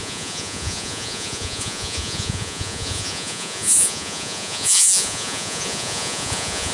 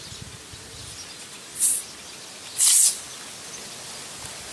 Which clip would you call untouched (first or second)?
second